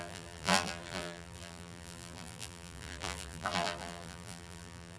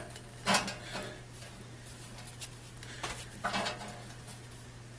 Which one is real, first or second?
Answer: second